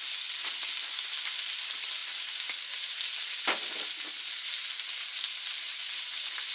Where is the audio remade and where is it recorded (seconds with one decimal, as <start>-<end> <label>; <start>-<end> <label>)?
0.0-6.5 recorded